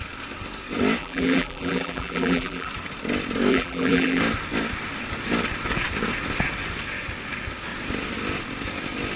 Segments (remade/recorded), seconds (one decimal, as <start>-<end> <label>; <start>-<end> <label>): 0.0-1.0 recorded; 1.0-2.7 remade; 2.7-3.5 recorded; 3.5-4.2 remade; 4.2-9.2 recorded